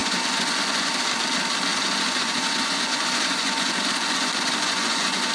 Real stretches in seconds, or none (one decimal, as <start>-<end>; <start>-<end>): 0.9-1.7